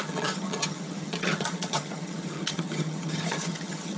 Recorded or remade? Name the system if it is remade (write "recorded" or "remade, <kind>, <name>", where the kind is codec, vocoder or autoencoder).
remade, vocoder, HiFi-GAN